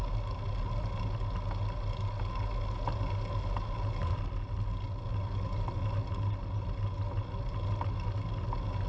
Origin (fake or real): real